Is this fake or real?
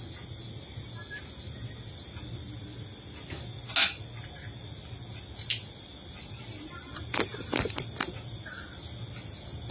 real